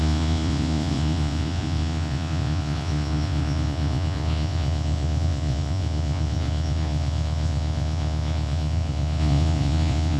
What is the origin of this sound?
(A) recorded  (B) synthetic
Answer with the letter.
B